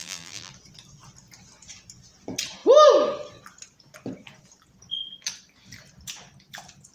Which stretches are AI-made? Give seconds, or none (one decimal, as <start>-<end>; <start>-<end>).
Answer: 0.0-0.5